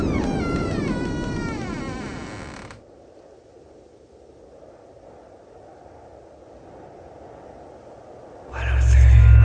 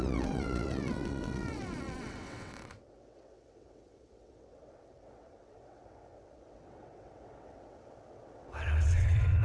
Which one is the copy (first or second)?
second